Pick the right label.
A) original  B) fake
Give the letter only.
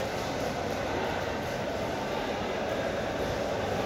A